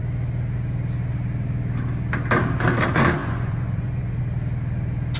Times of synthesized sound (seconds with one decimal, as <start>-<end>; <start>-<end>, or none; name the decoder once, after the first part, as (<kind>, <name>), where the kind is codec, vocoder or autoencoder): 3.2-4.2 (vocoder, Vocos)